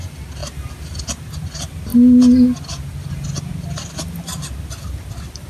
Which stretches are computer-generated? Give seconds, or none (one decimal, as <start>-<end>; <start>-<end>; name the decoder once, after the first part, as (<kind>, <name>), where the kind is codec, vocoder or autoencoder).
none